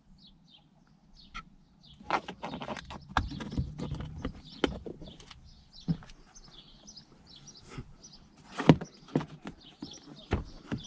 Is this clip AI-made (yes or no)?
no